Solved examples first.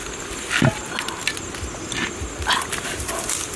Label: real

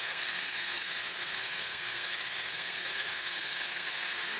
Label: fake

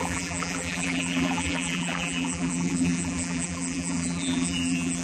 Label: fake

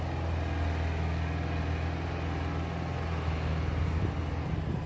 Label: real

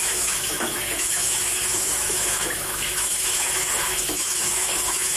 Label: fake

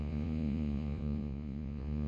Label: fake